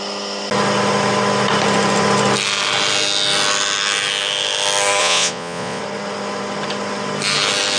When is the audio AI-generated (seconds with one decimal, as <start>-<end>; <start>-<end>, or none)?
5.0-5.8